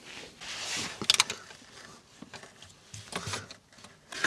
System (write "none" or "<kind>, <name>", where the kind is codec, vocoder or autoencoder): none